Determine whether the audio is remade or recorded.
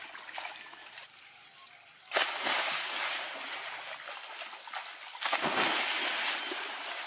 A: recorded